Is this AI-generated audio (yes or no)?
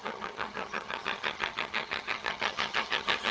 yes